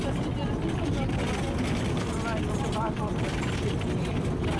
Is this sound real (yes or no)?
yes